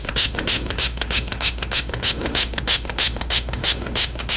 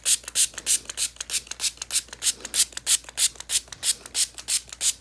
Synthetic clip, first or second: first